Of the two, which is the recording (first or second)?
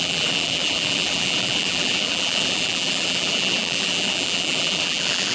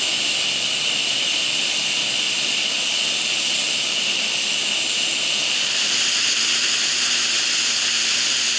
second